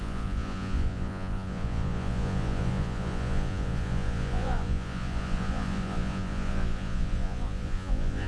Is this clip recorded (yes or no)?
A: no